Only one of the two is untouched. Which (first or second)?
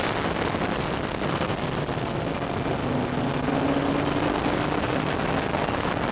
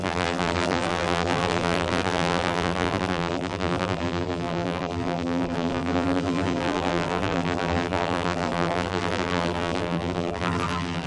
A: first